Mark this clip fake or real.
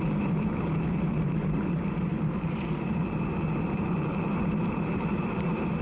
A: fake